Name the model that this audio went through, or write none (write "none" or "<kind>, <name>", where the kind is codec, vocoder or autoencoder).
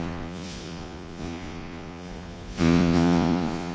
vocoder, Vocos